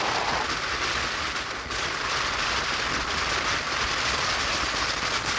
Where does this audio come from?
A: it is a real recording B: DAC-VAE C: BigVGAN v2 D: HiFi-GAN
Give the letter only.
A